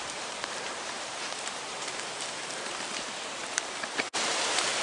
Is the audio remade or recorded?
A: remade